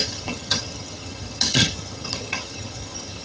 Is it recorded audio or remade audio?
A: remade